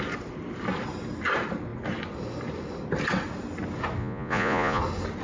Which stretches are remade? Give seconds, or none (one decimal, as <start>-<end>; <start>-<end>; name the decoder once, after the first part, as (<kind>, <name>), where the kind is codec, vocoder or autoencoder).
4.0-4.8 (vocoder, Vocos)